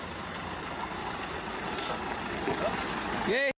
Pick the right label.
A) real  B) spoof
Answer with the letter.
A